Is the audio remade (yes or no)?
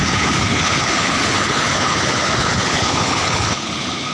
yes